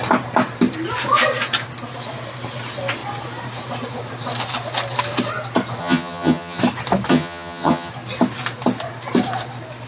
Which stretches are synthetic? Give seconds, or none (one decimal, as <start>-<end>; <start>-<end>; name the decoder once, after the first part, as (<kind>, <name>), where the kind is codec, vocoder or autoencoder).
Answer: 5.8-6.6 (vocoder, HiFi-GAN); 7.1-7.9